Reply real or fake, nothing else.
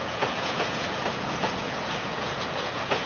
fake